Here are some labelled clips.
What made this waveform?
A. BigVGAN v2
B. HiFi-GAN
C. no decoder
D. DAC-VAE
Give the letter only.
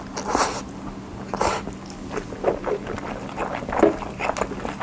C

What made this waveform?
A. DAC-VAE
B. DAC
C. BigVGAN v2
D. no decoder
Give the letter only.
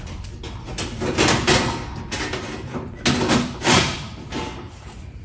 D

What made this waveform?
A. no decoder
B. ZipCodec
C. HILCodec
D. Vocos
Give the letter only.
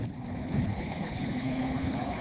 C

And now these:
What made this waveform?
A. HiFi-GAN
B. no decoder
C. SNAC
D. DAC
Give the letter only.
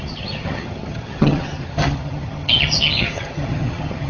A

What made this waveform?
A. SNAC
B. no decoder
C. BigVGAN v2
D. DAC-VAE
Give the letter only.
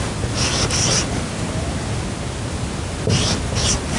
B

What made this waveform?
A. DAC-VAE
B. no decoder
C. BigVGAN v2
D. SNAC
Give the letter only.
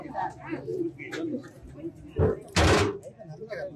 B